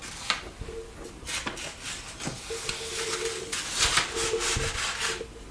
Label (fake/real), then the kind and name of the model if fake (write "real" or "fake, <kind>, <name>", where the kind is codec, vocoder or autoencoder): real